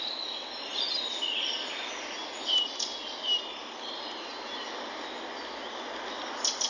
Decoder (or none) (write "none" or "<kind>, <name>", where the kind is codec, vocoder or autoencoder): none